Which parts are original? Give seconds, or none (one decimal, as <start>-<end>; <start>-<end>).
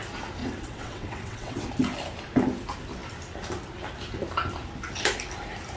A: 0.0-0.4; 1.7-5.8